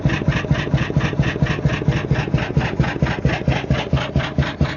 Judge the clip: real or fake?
real